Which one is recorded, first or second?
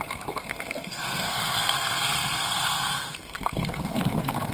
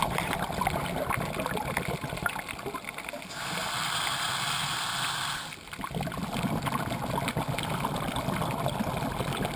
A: second